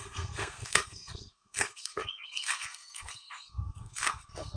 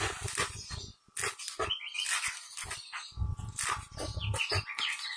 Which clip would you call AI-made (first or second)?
first